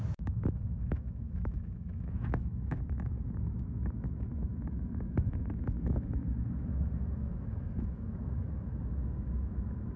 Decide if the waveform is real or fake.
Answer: fake